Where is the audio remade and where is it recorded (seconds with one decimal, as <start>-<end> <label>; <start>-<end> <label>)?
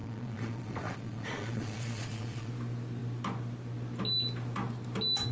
0.0-2.5 remade; 2.5-5.3 recorded